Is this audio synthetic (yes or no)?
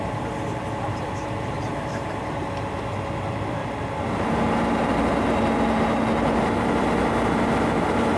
no